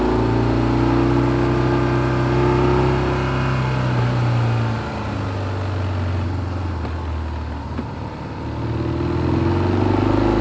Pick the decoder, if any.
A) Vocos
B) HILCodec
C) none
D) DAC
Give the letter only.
C